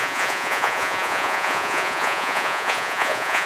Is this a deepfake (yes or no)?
yes